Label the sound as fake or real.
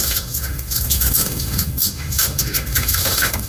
fake